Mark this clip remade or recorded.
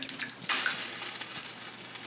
recorded